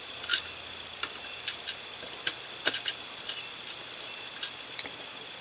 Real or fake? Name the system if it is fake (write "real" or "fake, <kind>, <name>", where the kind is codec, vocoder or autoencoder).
real